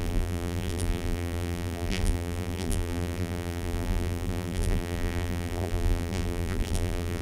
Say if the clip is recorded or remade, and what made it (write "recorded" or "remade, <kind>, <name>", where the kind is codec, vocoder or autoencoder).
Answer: remade, vocoder, BigVGAN v2